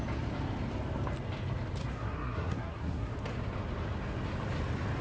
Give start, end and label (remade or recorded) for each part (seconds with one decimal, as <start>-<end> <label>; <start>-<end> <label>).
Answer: 0.0-1.8 recorded; 1.8-3.1 remade; 3.1-5.0 recorded